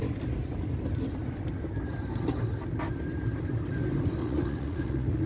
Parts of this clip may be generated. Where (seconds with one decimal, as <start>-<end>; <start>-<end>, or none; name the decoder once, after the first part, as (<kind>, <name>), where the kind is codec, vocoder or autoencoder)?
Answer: 4.2-5.3 (vocoder, Vocos)